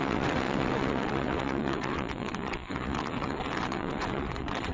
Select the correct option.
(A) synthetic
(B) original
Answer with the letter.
A